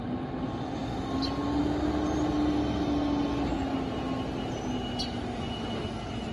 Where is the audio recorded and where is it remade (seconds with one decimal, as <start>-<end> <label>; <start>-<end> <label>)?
0.0-6.3 recorded